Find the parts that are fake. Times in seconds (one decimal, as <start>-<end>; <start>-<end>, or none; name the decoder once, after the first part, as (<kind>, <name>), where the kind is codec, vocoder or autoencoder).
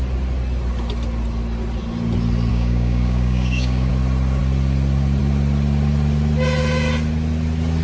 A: 2.5-3.9 (codec, DAC)